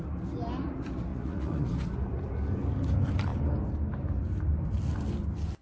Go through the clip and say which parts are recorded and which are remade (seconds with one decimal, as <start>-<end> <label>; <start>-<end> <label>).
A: 0.0-1.1 recorded; 1.1-1.7 remade; 1.7-5.6 recorded